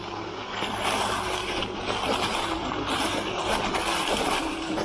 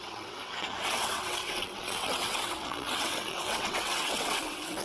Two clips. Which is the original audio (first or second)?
first